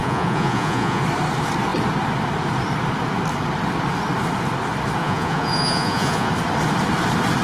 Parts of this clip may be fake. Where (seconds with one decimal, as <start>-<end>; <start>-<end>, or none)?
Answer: 0.0-1.0; 5.0-6.3